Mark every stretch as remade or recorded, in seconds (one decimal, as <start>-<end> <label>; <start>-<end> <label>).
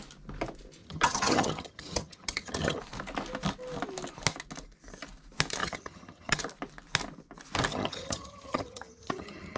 0.0-0.8 recorded; 0.8-2.8 remade; 2.8-5.6 recorded; 5.6-6.4 remade; 6.4-7.7 recorded; 7.7-9.6 remade